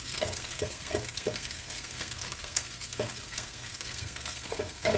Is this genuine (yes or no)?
no